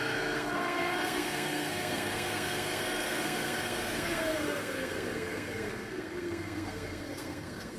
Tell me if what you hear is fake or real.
fake